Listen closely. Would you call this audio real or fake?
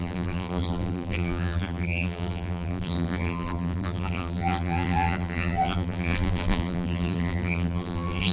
fake